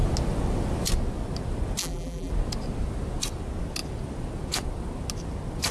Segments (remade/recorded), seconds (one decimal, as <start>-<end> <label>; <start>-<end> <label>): 0.0-1.8 recorded; 1.8-2.3 remade; 2.3-5.7 recorded